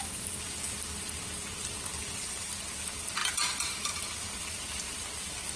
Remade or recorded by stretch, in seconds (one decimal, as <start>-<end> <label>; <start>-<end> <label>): 0.0-2.0 recorded; 2.0-2.5 remade; 2.5-5.6 recorded